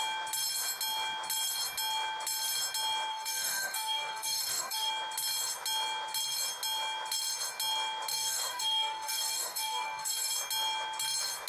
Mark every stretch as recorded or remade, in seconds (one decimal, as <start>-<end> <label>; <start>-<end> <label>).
0.0-3.1 recorded; 3.1-4.9 remade; 4.9-8.1 recorded; 8.1-10.3 remade; 10.3-11.5 recorded